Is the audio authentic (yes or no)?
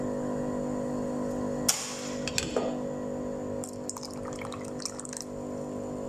yes